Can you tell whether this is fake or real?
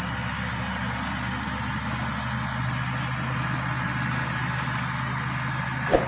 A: real